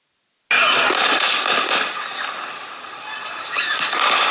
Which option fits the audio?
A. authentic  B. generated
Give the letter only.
A